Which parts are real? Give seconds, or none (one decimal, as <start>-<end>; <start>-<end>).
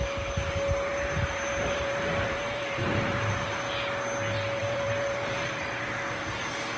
0.0-0.9; 3.7-4.6; 6.2-6.8